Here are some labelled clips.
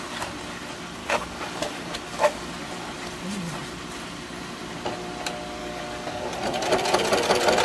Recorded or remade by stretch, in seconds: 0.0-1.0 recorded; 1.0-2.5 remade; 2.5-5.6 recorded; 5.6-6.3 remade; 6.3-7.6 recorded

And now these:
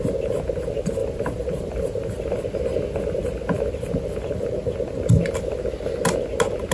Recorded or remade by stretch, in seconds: 0.0-1.0 recorded; 1.0-2.2 remade; 2.2-6.7 recorded

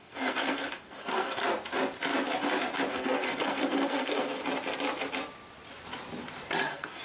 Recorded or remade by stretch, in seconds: 0.0-1.4 remade; 1.4-2.9 recorded; 2.9-4.4 remade; 4.4-6.6 recorded; 6.6-7.0 remade

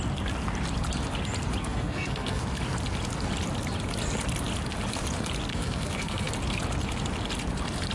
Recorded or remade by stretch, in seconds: 0.0-1.6 recorded; 1.6-2.4 remade; 2.4-5.5 recorded; 5.5-6.3 remade; 6.3-7.9 recorded

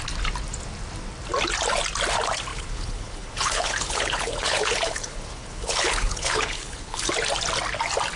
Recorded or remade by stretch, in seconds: 0.0-2.5 recorded; 2.5-7.1 remade; 7.1-8.2 recorded